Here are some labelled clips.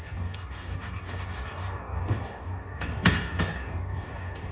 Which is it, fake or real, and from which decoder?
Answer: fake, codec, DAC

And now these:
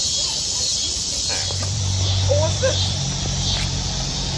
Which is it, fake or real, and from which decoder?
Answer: fake, vocoder, BigVGAN v2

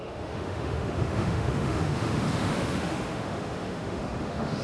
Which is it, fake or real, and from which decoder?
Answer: fake, autoencoder, DAC-VAE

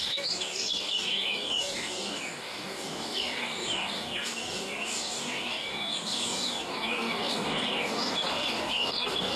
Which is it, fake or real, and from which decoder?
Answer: fake, codec, DAC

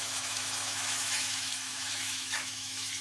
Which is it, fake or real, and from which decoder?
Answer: fake, autoencoder, DAC-VAE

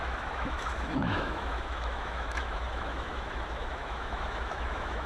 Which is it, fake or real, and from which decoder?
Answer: fake, autoencoder, DAC-VAE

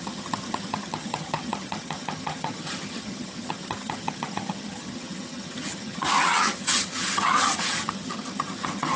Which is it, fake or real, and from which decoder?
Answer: fake, vocoder, HiFi-GAN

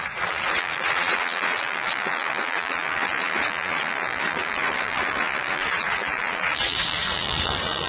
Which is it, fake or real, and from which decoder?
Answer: fake, vocoder, Vocos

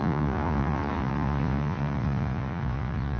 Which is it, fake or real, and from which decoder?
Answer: fake, vocoder, Vocos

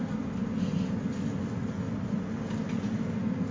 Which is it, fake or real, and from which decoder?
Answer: real